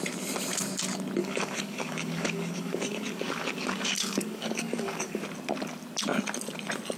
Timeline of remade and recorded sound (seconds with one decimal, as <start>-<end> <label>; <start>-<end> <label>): 0.0-1.2 recorded; 1.2-5.2 remade; 5.2-7.0 recorded